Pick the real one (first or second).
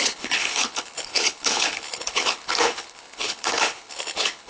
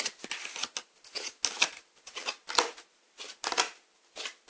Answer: second